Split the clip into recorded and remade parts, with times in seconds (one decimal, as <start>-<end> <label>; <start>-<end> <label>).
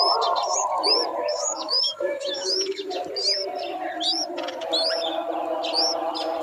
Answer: 0.0-1.3 recorded; 1.3-2.8 remade; 2.8-6.4 recorded